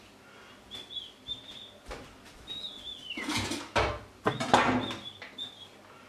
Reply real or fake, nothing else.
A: real